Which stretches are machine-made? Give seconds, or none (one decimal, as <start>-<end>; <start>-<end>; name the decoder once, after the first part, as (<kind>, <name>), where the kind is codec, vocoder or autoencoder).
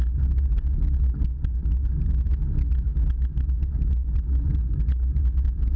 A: none